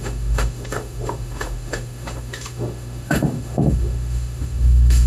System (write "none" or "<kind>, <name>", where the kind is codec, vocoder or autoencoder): autoencoder, DAC-VAE